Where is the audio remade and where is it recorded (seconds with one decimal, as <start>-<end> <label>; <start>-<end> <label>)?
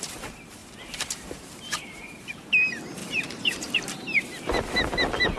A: 0.0-0.6 recorded; 0.6-2.2 remade; 2.2-3.0 recorded; 3.0-4.3 remade; 4.3-5.4 recorded